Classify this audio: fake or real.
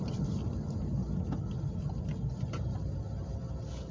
real